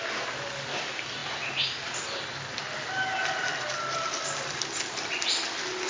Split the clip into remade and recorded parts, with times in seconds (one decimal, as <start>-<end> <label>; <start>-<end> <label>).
0.0-5.9 recorded